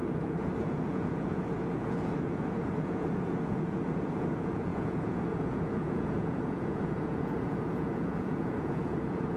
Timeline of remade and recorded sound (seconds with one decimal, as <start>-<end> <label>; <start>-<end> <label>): 0.0-9.4 remade